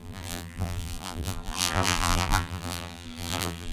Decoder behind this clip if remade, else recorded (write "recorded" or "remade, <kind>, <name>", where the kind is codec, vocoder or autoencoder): remade, vocoder, BigVGAN v2